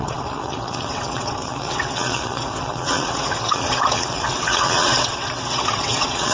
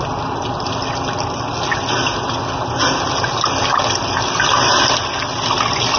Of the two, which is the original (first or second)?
second